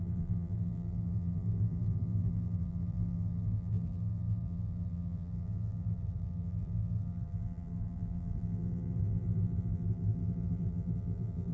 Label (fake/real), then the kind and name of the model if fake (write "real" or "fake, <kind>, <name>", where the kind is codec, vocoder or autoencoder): fake, vocoder, BigVGAN v2